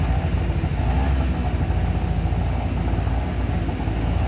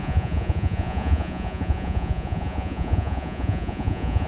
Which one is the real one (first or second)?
first